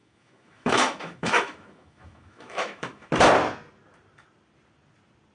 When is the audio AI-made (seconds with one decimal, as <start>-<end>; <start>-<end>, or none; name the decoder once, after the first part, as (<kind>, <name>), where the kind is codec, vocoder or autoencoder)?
0.0-3.1 (autoencoder, DAC-VAE)